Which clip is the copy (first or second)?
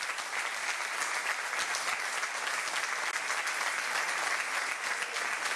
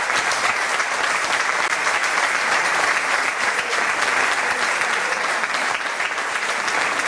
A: second